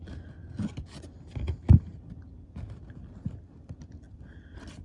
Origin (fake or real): real